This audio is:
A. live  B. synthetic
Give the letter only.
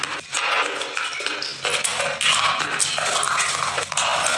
A